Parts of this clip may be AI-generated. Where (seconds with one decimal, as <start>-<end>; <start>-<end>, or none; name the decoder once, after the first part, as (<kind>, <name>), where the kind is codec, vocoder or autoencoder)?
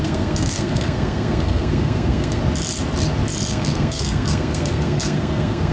0.0-2.4 (codec, SNAC); 3.5-5.7